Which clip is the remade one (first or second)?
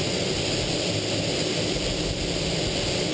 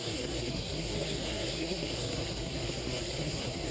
second